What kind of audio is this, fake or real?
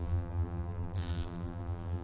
fake